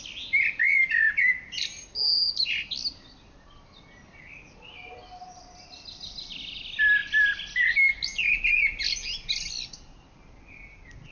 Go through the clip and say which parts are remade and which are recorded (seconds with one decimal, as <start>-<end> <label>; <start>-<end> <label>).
0.0-11.1 recorded